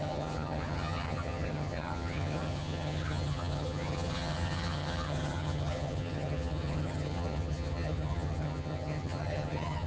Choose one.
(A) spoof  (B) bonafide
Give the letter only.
A